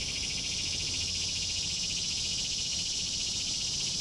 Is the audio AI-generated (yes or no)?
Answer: no